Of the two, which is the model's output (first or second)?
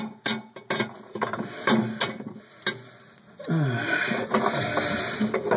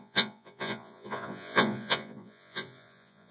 second